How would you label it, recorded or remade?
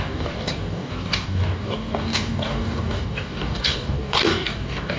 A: remade